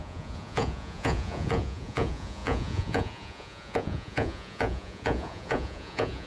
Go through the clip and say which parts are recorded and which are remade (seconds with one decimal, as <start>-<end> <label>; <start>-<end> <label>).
0.0-6.3 remade